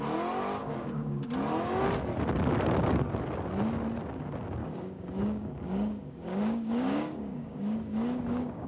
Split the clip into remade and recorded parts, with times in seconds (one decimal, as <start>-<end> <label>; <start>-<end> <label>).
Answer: 0.0-0.6 recorded; 0.6-1.2 remade; 1.2-4.6 recorded; 4.6-8.7 remade